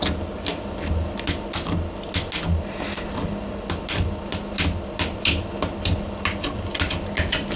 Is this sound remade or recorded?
recorded